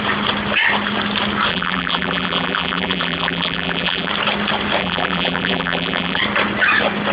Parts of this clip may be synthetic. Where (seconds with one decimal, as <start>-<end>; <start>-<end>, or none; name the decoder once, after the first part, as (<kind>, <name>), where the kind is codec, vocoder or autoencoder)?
1.5-4.1 (vocoder, BigVGAN v2); 4.8-6.2